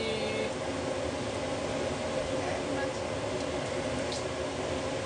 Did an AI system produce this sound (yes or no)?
no